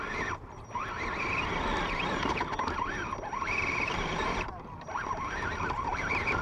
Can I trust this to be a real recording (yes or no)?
no